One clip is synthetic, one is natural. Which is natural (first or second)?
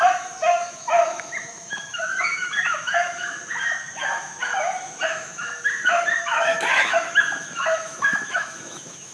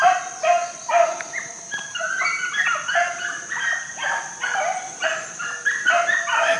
second